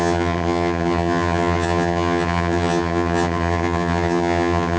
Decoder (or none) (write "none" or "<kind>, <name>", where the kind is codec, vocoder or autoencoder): vocoder, HiFi-GAN